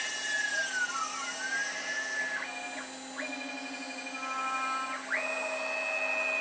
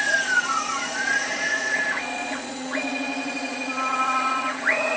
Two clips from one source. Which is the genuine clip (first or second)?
first